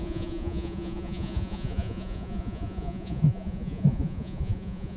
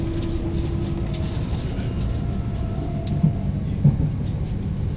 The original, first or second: second